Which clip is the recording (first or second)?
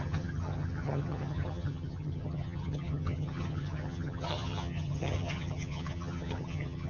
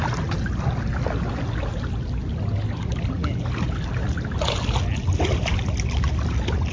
second